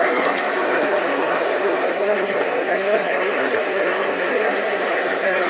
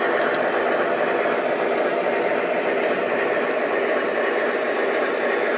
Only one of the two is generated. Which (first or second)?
first